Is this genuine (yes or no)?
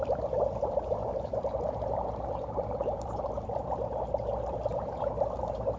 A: no